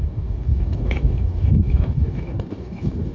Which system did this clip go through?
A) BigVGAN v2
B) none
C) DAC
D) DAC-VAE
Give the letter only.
C